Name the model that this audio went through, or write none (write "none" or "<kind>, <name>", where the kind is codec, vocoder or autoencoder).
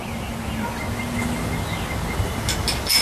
none